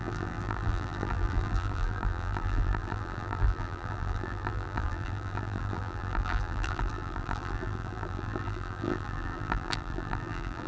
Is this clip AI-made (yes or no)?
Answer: yes